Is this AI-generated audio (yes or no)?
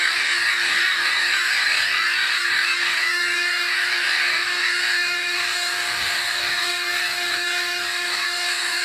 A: yes